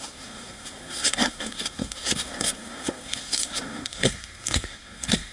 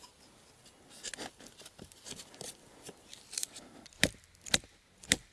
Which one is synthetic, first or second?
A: first